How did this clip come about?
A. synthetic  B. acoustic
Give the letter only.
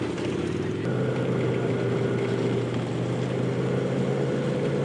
B